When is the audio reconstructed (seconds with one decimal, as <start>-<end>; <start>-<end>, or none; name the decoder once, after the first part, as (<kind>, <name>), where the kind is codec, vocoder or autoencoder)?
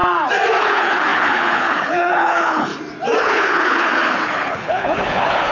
0.6-2.7 (codec, HILCodec); 3.2-5.5